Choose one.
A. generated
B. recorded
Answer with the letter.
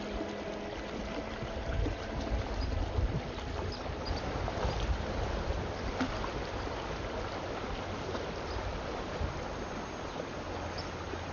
B